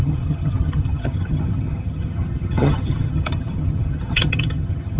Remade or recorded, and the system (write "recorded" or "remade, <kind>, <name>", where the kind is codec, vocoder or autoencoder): remade, vocoder, HiFi-GAN